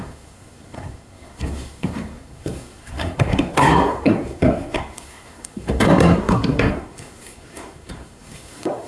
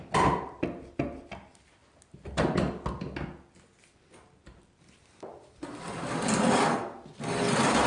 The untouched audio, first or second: second